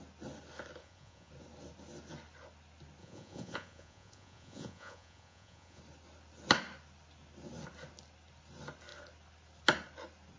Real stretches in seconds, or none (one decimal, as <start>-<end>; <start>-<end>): 0.0-0.8; 1.3-3.0; 5.8-10.4